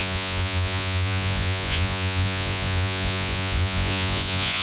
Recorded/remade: remade